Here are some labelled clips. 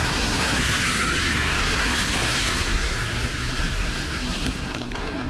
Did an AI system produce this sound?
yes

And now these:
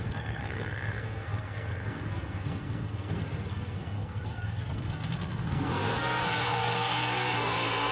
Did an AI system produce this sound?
yes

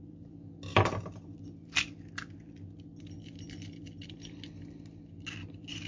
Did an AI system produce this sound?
no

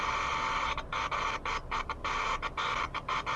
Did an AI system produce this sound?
no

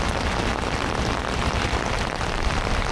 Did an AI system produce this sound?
yes